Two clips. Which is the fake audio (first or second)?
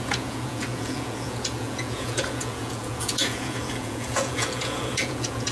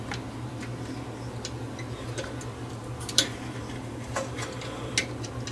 first